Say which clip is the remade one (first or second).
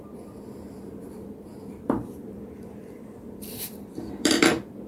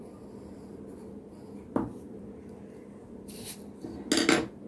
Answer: first